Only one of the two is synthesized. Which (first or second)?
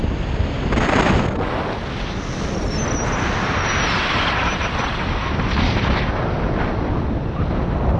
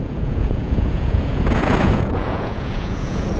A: second